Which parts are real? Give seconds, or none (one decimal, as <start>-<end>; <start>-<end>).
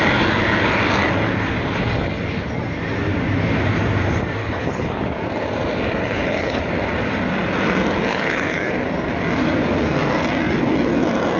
0.0-4.4; 5.0-6.0; 6.7-8.1; 8.7-11.4